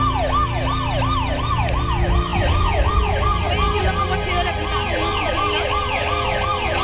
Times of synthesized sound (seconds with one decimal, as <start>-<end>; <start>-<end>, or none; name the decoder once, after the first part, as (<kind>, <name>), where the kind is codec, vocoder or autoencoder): none